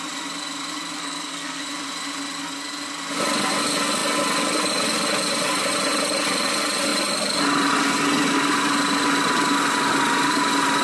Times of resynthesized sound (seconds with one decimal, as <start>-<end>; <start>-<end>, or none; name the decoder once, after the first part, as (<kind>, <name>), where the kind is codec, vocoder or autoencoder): 1.0-1.6 (codec, SNAC)